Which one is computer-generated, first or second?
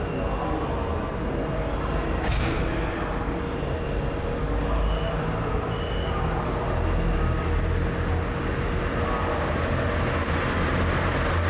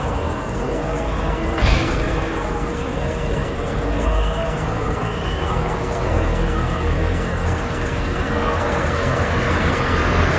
second